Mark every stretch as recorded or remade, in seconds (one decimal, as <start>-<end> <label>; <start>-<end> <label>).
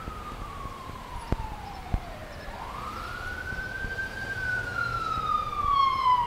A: 0.0-2.2 remade; 2.2-4.0 recorded; 4.0-6.3 remade